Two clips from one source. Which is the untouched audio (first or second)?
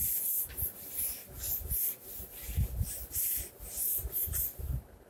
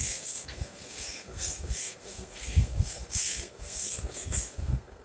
first